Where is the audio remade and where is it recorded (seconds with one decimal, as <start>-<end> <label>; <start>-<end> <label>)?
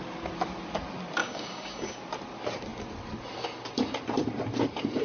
0.0-1.2 recorded; 1.2-2.0 remade; 2.0-5.0 recorded